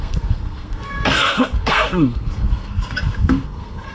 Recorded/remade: remade